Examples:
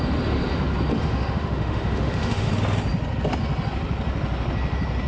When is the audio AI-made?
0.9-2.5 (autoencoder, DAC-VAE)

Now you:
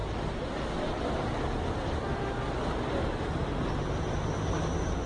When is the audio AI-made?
none

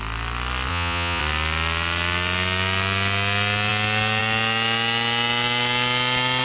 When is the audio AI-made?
0.7-1.2 (vocoder, Vocos)

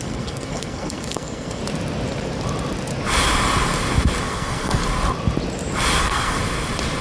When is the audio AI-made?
0.0-1.6 (codec, SNAC); 4.2-4.8; 6.0-6.4